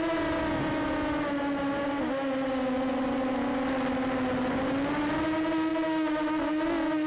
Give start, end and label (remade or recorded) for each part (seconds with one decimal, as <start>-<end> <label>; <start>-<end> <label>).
0.0-7.1 recorded